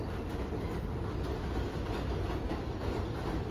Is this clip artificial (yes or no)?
no